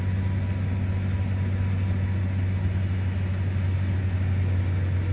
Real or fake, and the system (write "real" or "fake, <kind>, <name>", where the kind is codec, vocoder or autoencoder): real